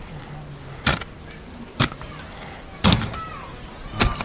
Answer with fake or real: real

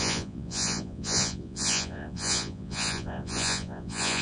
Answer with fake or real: fake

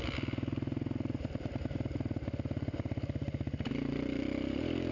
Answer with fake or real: real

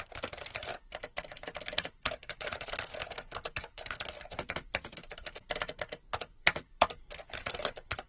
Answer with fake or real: fake